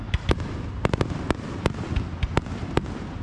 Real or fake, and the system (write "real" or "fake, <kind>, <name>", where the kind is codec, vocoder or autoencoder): real